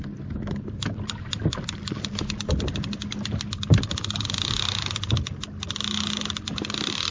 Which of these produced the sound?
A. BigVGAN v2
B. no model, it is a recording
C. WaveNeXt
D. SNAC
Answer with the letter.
B